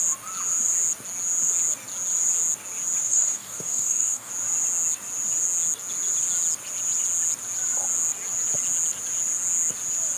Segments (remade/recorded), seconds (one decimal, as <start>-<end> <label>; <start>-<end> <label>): 0.0-3.0 recorded; 3.0-4.3 remade; 4.3-10.2 recorded